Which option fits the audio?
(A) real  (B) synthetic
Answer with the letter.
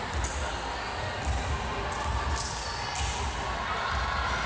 A